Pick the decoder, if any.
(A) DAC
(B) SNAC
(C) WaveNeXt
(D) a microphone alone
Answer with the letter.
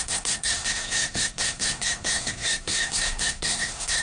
B